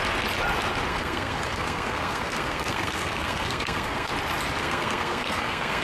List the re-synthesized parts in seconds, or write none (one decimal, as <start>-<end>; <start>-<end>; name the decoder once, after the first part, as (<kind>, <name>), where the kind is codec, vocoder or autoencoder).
0.9-4.1 (codec, SNAC); 4.6-5.8